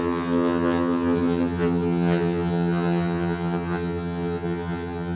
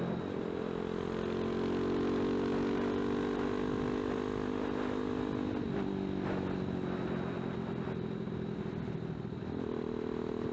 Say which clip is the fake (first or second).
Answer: first